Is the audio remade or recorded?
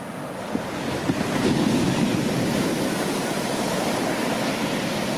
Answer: recorded